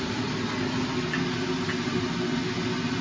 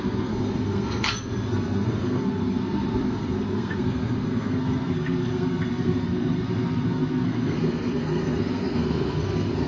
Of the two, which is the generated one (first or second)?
second